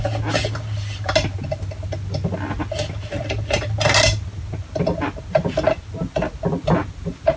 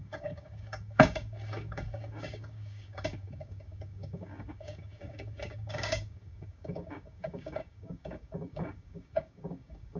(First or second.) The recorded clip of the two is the first